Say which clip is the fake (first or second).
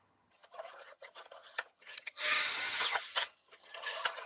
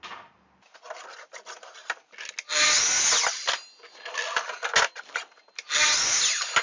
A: first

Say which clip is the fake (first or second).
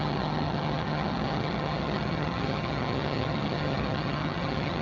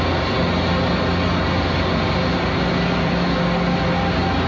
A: first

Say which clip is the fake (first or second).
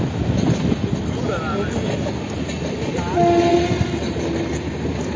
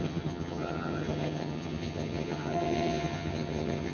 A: second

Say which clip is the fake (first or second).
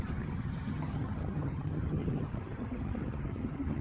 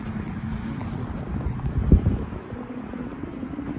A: first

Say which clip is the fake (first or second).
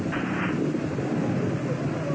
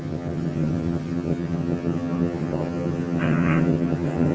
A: second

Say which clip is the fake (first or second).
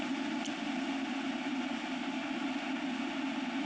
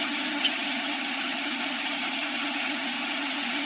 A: second